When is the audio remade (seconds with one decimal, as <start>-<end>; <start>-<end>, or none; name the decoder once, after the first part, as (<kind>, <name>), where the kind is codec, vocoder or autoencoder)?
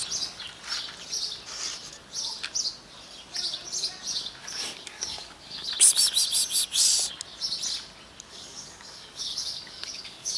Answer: 4.4-5.7 (codec, DAC); 8.3-10.4